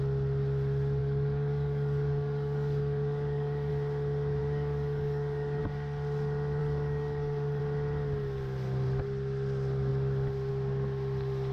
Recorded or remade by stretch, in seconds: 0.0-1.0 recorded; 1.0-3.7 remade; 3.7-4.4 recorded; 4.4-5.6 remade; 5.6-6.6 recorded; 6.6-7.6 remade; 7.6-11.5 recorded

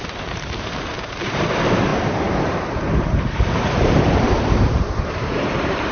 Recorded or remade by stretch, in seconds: 0.0-5.9 remade

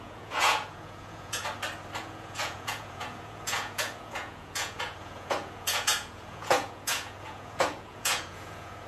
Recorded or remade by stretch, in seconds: 0.0-1.4 remade; 1.4-2.0 recorded; 2.0-8.9 remade

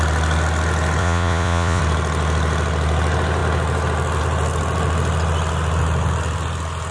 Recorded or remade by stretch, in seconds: 0.0-1.0 recorded; 1.0-1.8 remade; 1.8-6.9 recorded

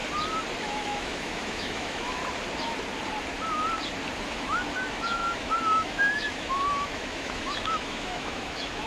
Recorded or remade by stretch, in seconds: 0.0-0.6 recorded; 0.6-2.2 remade; 2.2-4.2 recorded; 4.2-8.9 remade

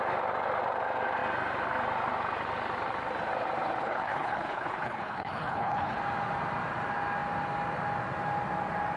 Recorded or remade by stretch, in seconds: 0.0-3.8 recorded; 3.8-6.0 remade; 6.0-9.0 recorded

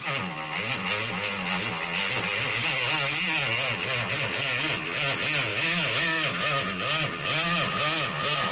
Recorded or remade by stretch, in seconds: 0.0-5.5 recorded; 5.5-6.6 remade; 6.6-8.5 recorded